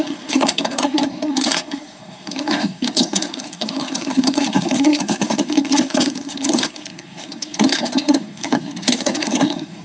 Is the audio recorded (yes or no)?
no